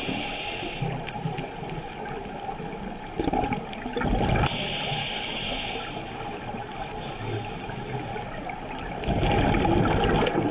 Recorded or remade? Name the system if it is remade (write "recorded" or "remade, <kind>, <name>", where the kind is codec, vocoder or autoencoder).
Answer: recorded